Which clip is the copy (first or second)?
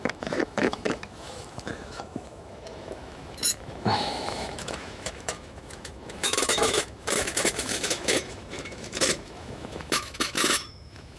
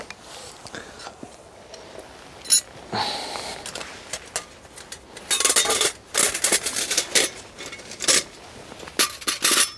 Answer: first